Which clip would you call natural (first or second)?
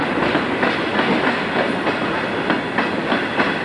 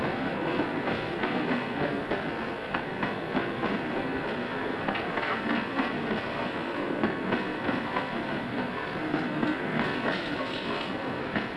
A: first